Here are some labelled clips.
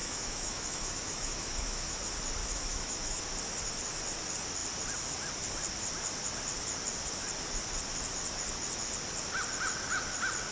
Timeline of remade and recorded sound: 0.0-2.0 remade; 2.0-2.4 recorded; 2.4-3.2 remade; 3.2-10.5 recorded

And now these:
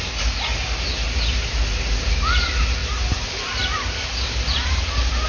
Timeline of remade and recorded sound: 0.0-5.3 recorded

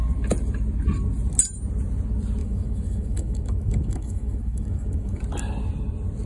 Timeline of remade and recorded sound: 0.0-2.4 recorded; 2.4-5.2 remade; 5.2-6.3 recorded

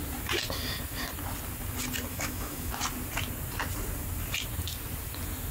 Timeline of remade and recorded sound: 0.0-2.1 recorded; 2.1-2.7 remade; 2.7-5.5 recorded

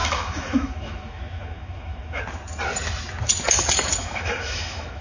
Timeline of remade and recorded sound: 0.0-2.2 remade; 2.2-4.0 recorded; 4.0-5.0 remade